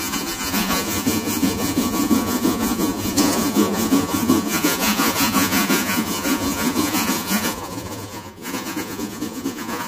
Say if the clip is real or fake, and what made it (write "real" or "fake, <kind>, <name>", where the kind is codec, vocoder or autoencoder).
fake, vocoder, Vocos